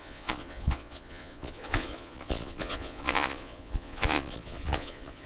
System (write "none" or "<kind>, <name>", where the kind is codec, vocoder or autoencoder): vocoder, Vocos